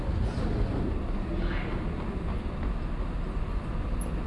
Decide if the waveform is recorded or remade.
recorded